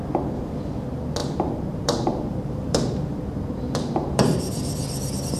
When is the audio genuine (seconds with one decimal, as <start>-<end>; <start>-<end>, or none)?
0.5-1.2; 4.4-5.4

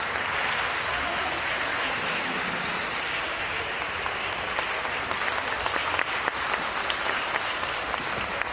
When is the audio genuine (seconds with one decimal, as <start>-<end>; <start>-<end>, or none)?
0.0-1.7; 2.4-8.5

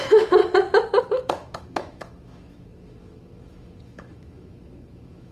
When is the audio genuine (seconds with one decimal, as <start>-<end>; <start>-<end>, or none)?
0.4-1.0

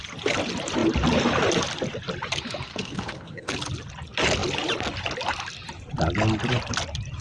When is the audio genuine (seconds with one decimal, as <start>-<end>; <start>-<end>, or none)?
0.0-2.7; 3.5-7.2

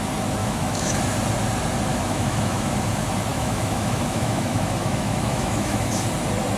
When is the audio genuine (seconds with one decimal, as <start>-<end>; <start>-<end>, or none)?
0.0-0.4; 1.0-1.9; 2.7-3.3; 5.9-6.6

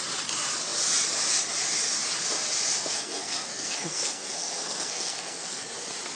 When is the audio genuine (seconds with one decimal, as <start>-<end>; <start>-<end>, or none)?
0.0-2.8; 5.6-6.2

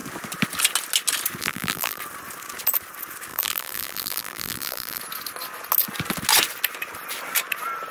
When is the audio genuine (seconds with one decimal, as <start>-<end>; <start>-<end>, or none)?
0.0-1.4; 2.0-3.3; 5.0-7.9